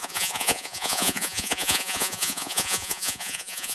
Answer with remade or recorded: remade